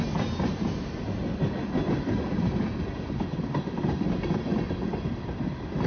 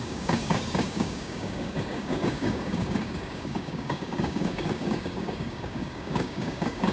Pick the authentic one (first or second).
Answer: first